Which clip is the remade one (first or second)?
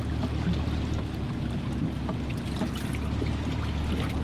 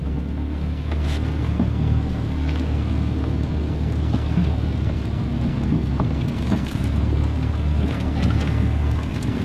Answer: second